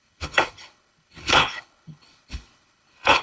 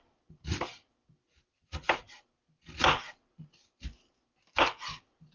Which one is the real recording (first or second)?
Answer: second